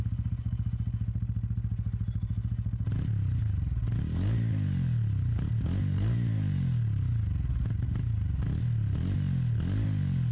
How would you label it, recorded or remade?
recorded